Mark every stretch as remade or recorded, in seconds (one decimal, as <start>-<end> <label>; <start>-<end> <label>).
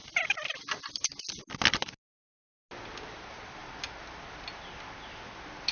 0.0-1.0 remade; 1.0-5.7 recorded